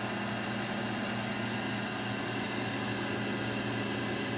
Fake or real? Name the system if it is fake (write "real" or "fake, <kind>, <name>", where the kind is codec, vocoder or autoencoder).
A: real